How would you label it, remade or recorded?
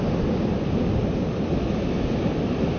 recorded